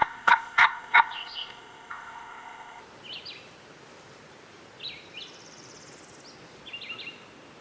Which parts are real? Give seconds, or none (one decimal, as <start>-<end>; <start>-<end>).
2.8-7.6

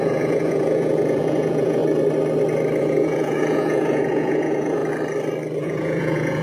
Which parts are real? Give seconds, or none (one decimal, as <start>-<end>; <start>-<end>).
1.8-2.8; 4.8-5.6